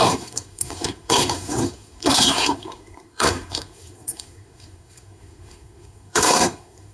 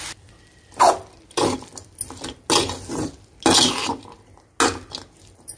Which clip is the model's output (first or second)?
first